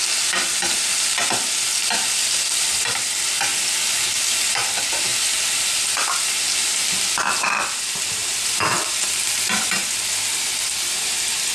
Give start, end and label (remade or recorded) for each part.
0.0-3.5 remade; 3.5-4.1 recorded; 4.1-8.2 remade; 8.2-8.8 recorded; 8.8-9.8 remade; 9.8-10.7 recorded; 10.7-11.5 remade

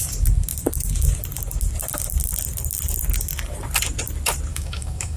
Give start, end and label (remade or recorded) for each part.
0.0-4.5 recorded; 4.5-5.2 remade

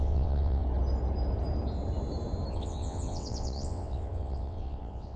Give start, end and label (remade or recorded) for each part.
0.0-0.6 remade; 0.6-2.5 recorded; 2.5-5.2 remade

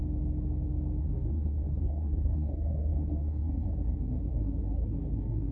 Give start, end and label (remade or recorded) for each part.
0.0-1.0 recorded; 1.0-5.5 remade

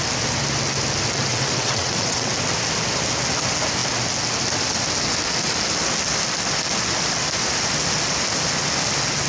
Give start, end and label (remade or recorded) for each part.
0.0-1.3 recorded; 1.3-2.3 remade; 2.3-9.3 recorded